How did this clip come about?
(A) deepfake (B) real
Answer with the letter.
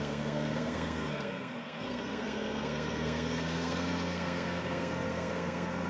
A